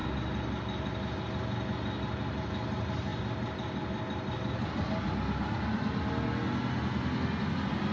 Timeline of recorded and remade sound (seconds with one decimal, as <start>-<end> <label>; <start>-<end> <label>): 0.0-7.9 recorded